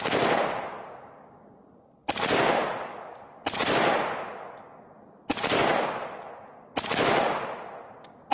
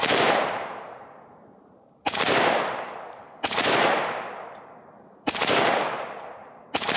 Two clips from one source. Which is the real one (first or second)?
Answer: first